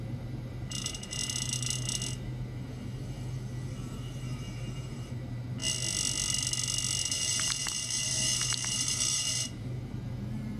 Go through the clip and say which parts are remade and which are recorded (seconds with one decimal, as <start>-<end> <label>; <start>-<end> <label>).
0.0-1.2 remade; 1.2-3.7 recorded; 3.7-5.6 remade; 5.6-7.0 recorded; 7.0-10.6 remade